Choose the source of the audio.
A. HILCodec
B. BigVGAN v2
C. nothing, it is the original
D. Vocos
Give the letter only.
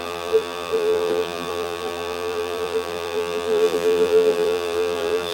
B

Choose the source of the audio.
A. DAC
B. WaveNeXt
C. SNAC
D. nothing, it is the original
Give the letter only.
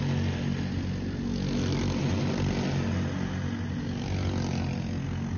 D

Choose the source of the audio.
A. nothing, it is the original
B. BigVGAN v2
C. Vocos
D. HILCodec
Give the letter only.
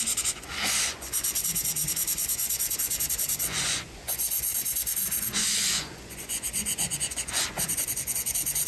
C